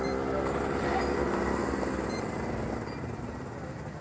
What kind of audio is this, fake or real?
real